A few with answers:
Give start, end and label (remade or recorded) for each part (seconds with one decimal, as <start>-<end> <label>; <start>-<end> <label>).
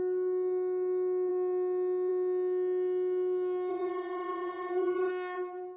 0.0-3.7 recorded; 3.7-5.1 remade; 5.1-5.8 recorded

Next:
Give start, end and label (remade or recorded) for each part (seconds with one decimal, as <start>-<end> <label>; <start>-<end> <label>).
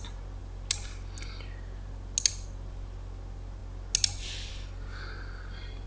0.0-5.9 recorded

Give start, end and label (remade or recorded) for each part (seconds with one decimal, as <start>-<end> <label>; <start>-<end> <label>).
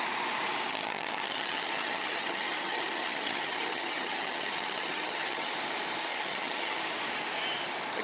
0.0-0.7 recorded; 0.7-5.5 remade; 5.5-6.1 recorded; 6.1-6.8 remade; 6.8-8.0 recorded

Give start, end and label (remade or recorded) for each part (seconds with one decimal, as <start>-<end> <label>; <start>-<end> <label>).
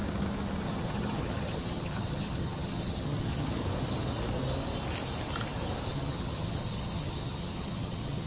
0.0-0.6 recorded; 0.6-3.6 remade; 3.6-5.9 recorded; 5.9-8.3 remade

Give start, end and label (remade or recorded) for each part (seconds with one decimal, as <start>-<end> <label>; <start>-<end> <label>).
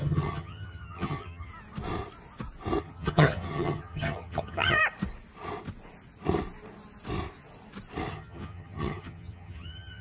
0.0-1.5 remade; 1.5-2.8 recorded; 2.8-4.8 remade; 4.8-8.1 recorded; 8.1-10.0 remade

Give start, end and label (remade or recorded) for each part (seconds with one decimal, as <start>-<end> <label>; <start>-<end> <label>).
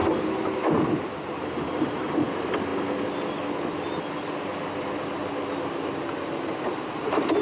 0.0-7.4 recorded